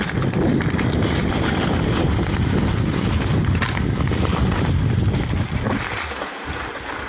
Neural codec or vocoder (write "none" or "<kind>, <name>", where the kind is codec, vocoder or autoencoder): none